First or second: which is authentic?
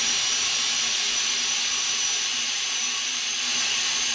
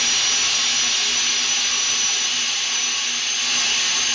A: second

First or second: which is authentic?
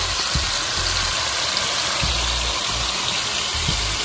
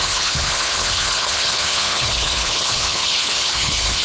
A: first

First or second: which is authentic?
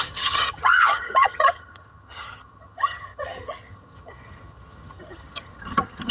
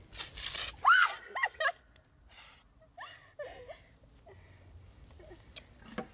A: second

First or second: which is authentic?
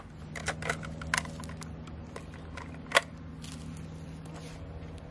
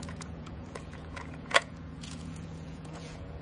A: first